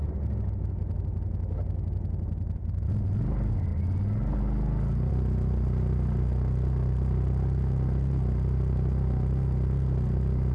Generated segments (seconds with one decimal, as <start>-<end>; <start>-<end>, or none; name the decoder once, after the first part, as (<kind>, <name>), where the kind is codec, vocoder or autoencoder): none